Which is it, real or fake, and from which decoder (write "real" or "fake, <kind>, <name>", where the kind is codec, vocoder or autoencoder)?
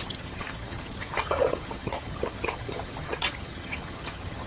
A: fake, vocoder, HiFi-GAN